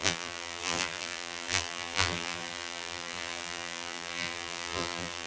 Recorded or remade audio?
remade